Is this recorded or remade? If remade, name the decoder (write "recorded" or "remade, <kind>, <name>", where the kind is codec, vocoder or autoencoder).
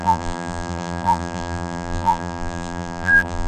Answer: remade, vocoder, BigVGAN v2